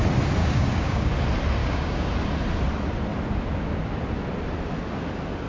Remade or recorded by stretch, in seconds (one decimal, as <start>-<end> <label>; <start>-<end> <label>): 0.0-0.4 recorded; 0.4-1.1 remade; 1.1-1.6 recorded; 1.6-2.1 remade; 2.1-5.5 recorded

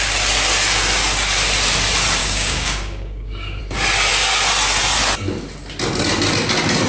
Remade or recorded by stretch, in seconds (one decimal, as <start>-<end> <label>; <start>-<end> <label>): 0.0-2.2 recorded; 2.2-3.6 remade; 3.6-6.9 recorded